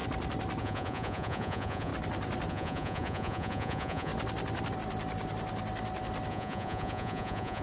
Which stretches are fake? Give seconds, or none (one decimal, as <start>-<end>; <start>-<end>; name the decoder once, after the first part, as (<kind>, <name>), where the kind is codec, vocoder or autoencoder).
0.6-1.9 (vocoder, Vocos); 2.5-4.1; 6.3-7.6